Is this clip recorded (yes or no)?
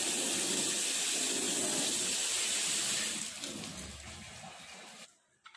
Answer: yes